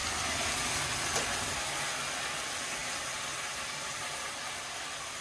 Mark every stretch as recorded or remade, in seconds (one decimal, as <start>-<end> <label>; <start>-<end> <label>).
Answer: 0.0-2.8 recorded; 2.8-4.6 remade; 4.6-5.2 recorded